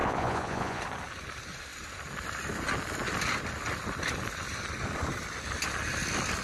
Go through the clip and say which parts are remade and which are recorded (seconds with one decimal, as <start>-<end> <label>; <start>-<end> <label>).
0.0-0.8 remade; 0.8-6.4 recorded